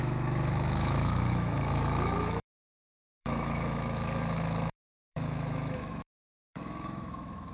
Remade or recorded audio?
remade